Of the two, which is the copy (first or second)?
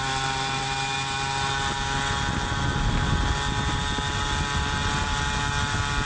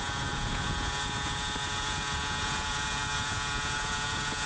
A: second